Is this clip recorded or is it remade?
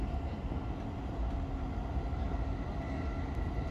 recorded